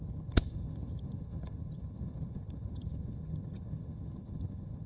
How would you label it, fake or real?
fake